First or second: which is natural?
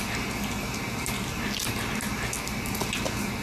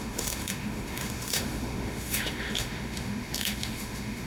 first